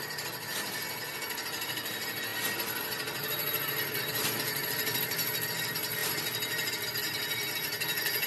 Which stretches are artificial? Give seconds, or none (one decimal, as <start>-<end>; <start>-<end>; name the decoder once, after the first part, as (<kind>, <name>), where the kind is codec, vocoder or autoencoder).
none